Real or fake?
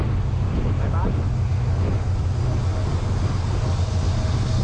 real